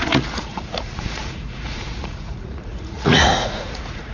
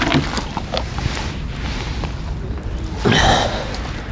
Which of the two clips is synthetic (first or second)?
first